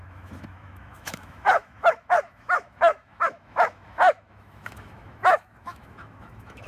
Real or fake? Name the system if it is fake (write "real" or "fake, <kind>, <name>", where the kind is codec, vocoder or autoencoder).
fake, autoencoder, DAC-VAE